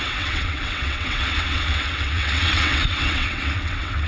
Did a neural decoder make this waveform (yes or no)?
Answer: yes